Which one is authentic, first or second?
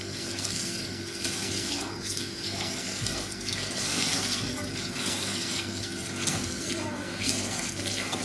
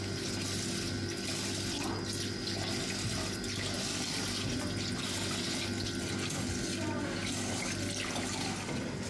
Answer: second